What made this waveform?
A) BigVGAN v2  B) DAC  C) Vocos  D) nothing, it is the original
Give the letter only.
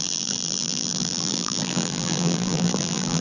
A